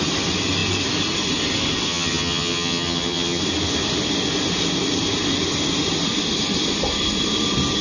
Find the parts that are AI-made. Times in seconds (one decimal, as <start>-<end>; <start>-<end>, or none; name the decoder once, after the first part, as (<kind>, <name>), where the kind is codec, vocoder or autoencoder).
1.9-3.4 (vocoder, HiFi-GAN)